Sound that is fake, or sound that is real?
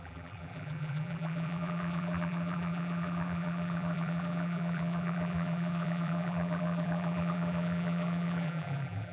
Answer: fake